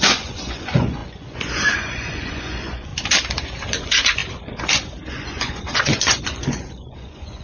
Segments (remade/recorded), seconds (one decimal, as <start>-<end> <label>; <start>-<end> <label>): 0.0-2.9 remade; 2.9-3.7 recorded; 3.7-4.2 remade; 4.2-5.1 recorded; 5.1-7.4 remade